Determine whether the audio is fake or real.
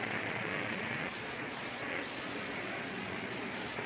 fake